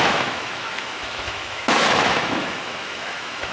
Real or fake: fake